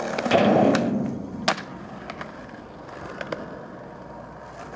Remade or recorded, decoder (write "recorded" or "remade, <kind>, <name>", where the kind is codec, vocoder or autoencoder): recorded